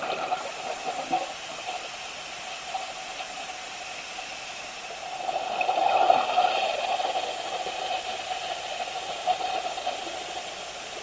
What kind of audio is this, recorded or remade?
recorded